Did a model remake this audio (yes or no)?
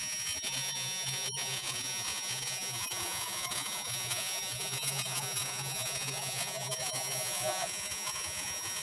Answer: yes